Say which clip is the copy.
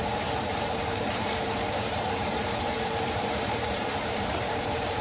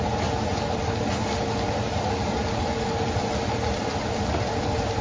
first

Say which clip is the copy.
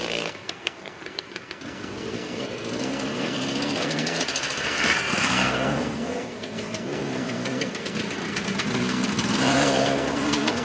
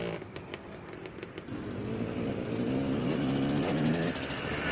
first